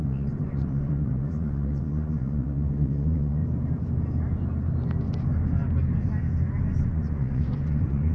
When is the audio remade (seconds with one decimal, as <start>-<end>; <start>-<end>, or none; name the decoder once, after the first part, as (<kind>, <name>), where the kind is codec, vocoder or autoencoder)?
0.0-3.4 (vocoder, Vocos); 6.7-8.1